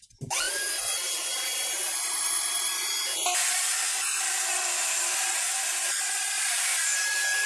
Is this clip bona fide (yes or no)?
no